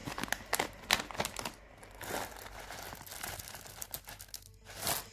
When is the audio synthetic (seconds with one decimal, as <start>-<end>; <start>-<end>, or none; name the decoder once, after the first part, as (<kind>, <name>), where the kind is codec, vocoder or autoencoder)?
none